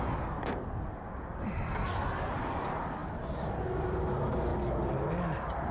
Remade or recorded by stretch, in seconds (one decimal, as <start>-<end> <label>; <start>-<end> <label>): 0.0-5.7 recorded